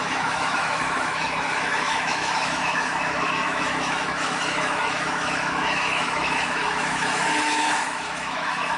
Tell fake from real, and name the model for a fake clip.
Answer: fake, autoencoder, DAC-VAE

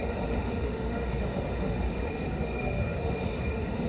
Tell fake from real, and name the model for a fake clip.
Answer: fake, autoencoder, DAC-VAE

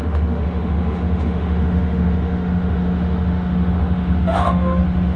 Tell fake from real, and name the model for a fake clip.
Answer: fake, autoencoder, DAC-VAE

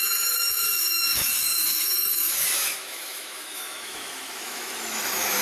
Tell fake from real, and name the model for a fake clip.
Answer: fake, autoencoder, DAC-VAE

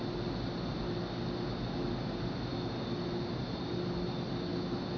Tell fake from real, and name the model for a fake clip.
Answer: real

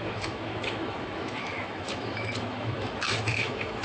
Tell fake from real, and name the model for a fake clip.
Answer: fake, autoencoder, DAC-VAE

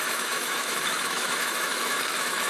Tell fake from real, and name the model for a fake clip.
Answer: fake, autoencoder, DAC-VAE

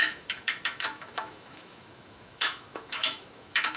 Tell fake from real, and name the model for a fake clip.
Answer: fake, autoencoder, DAC-VAE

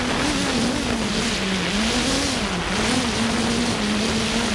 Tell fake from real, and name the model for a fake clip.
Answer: real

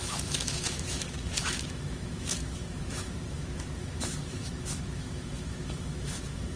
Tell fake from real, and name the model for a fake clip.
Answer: fake, autoencoder, DAC-VAE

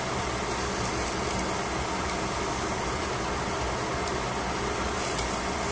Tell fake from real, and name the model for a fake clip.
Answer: real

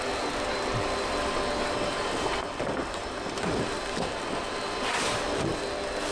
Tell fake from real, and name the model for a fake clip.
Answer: real